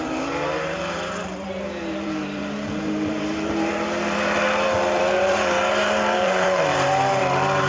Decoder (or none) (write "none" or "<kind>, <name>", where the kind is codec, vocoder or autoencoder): vocoder, BigVGAN v2